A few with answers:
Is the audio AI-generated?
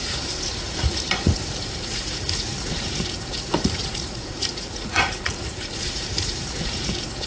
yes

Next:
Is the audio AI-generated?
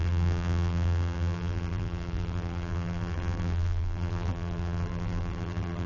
yes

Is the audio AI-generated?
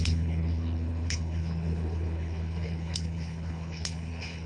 yes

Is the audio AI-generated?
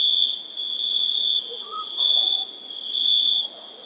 yes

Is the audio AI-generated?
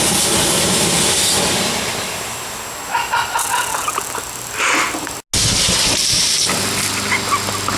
no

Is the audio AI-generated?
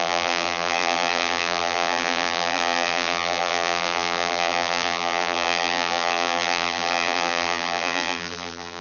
yes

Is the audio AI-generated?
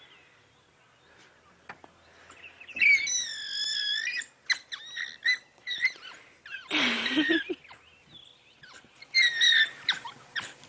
no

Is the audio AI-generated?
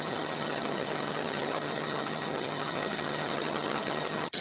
yes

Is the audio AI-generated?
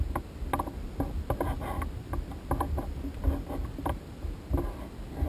no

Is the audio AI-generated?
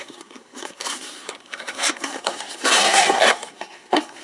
yes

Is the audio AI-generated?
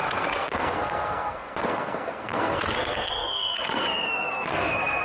yes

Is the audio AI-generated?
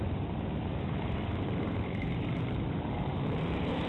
yes